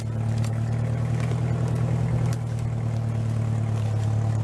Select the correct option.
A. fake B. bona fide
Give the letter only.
B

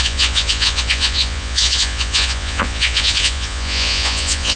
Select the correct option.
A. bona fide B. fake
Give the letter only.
B